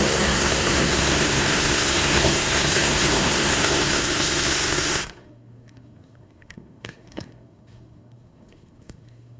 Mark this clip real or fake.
fake